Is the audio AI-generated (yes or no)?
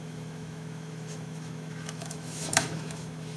yes